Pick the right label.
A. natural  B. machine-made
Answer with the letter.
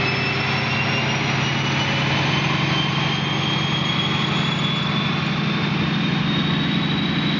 A